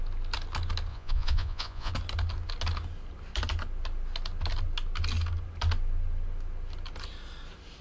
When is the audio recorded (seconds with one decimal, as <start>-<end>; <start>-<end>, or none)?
0.0-0.9; 1.9-7.8